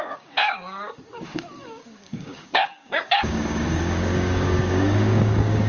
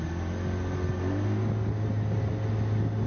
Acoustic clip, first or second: second